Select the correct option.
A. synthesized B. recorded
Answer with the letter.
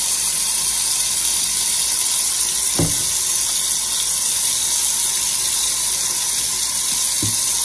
B